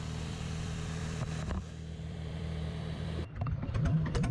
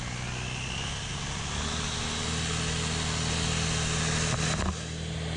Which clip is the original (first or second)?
second